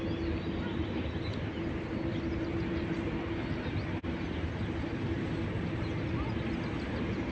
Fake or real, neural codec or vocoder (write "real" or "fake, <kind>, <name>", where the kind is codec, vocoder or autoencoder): real